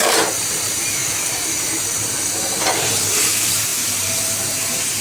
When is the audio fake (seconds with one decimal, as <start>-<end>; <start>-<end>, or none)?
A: 0.0-1.0; 2.0-5.0